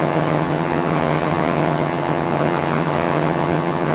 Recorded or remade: remade